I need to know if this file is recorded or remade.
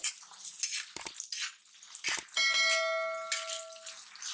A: recorded